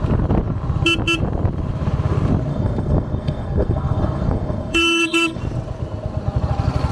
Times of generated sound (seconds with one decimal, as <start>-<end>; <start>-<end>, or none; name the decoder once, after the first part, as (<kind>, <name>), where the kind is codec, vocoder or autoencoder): 2.5-5.4 (codec, SNAC)